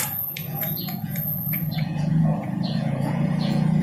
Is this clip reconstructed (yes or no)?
yes